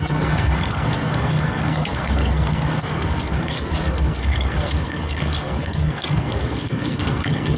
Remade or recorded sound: remade